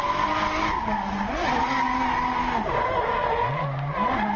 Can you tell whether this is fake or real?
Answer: real